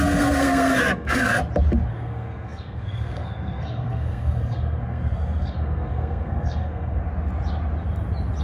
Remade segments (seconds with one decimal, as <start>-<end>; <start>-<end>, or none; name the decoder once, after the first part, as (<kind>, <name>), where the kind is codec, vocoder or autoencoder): 0.0-1.4 (codec, SNAC); 1.9-7.0